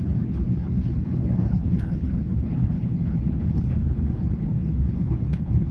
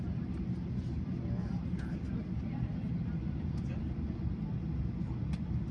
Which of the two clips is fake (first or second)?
first